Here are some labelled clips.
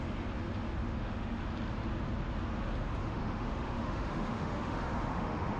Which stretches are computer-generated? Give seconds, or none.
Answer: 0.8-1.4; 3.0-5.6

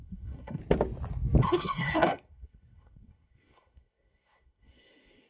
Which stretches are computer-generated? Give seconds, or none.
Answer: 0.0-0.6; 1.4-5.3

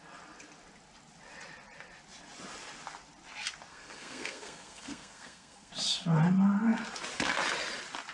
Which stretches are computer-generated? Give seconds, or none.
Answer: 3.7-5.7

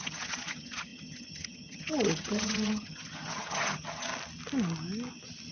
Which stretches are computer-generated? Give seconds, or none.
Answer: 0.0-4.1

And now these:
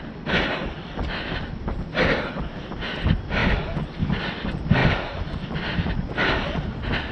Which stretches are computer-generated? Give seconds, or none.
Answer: none

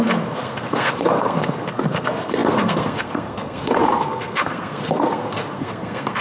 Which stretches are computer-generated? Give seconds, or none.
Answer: 0.0-6.2